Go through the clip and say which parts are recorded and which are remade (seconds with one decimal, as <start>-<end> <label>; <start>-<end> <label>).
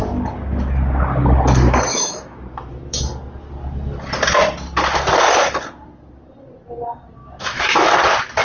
0.0-1.9 recorded; 1.9-3.0 remade; 3.0-7.2 recorded; 7.2-7.9 remade; 7.9-8.4 recorded